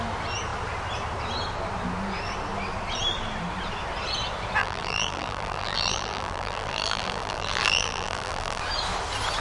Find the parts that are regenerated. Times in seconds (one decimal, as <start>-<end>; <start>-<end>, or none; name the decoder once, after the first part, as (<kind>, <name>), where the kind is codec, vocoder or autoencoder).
4.6-8.6 (vocoder, BigVGAN v2)